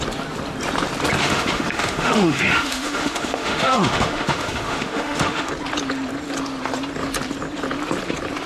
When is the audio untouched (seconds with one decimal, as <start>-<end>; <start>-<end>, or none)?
0.0-1.2; 5.5-8.5